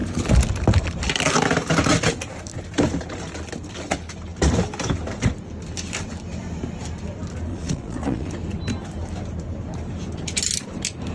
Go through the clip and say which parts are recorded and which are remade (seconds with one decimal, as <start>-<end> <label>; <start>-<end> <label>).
0.0-7.5 recorded; 7.5-8.3 remade; 8.3-11.1 recorded